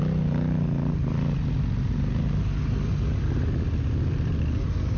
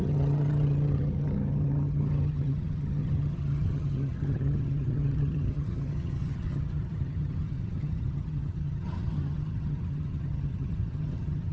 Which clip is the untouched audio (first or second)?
first